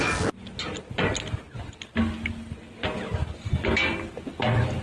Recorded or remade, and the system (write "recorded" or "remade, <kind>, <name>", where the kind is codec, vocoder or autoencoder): recorded